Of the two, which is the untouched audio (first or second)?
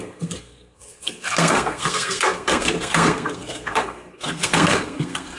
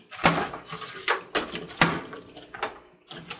second